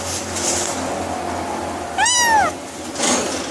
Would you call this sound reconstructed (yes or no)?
no